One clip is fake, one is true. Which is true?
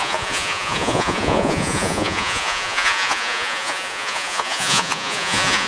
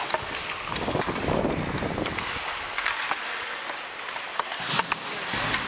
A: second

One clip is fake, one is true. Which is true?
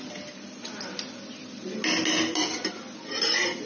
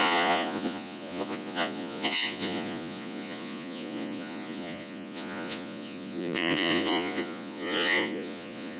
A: first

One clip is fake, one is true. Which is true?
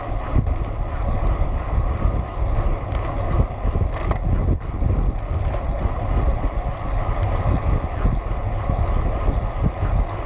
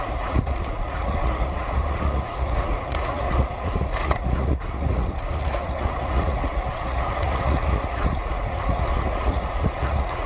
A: first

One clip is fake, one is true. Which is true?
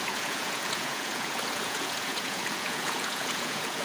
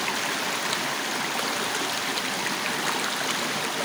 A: second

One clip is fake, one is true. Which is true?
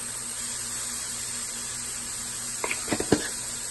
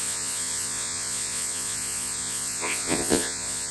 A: first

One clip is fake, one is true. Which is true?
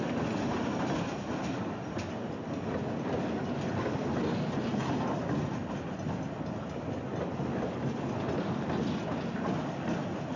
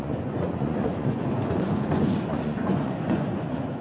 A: first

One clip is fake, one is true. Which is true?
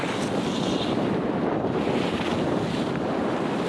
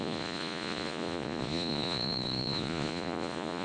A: first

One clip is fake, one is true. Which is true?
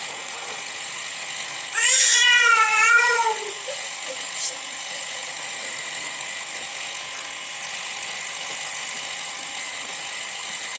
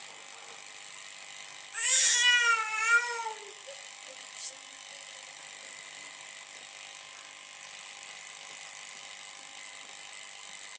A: second